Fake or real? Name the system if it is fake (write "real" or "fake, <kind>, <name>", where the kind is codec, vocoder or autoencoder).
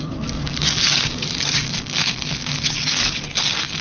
fake, codec, DAC